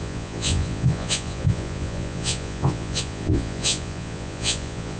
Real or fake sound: fake